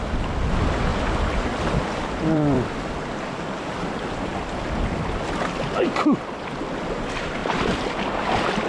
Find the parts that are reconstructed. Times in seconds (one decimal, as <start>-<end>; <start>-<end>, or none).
0.0-0.9; 1.5-4.3; 6.6-8.7